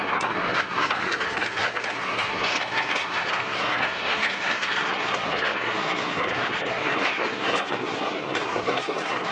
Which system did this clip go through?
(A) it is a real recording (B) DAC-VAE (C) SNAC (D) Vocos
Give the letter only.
C